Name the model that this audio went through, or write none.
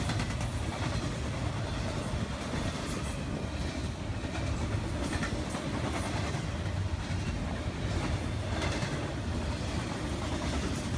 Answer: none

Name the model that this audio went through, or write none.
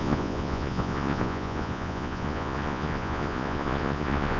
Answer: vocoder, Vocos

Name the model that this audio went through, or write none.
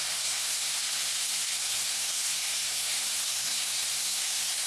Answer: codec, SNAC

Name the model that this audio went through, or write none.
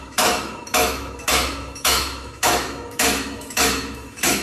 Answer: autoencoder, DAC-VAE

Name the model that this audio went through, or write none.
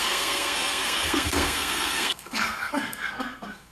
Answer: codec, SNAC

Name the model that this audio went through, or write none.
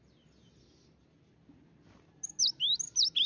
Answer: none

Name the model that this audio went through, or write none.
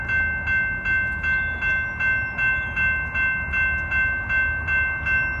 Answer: none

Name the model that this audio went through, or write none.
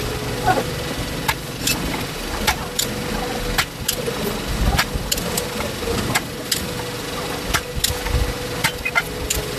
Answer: none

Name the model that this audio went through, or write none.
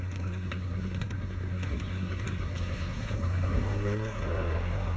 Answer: codec, SNAC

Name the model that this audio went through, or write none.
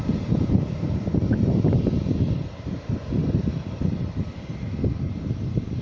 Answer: vocoder, BigVGAN v2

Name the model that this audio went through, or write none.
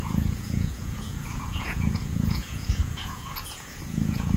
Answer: vocoder, Vocos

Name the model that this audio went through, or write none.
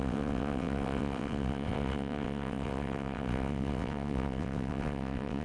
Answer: vocoder, WaveNeXt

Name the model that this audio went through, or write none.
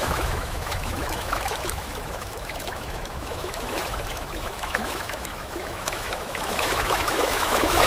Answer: autoencoder, DAC-VAE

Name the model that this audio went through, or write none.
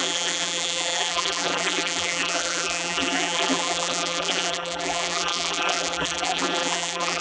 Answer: vocoder, BigVGAN v2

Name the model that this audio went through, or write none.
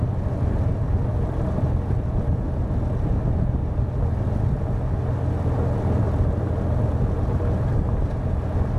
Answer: none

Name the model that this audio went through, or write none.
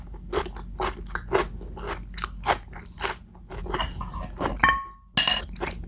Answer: none